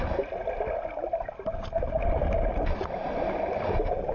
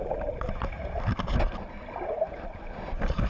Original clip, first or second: first